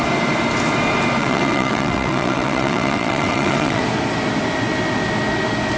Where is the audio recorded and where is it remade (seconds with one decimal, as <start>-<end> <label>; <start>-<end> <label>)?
0.0-1.2 recorded; 1.2-3.8 remade; 3.8-5.8 recorded